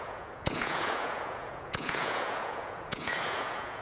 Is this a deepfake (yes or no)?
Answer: yes